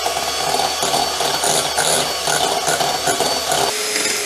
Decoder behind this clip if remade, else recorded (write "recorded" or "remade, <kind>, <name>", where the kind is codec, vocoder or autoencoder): recorded